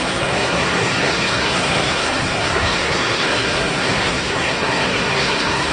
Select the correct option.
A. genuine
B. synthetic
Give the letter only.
B